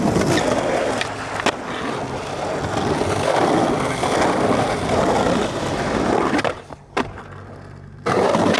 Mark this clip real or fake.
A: real